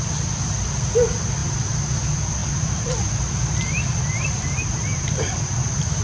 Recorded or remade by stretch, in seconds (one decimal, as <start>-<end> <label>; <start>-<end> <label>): 0.0-1.4 recorded; 1.4-2.0 remade; 2.0-2.4 recorded; 2.4-6.0 remade